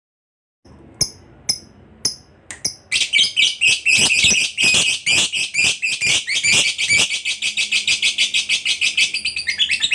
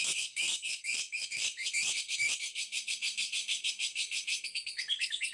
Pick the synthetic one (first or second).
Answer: second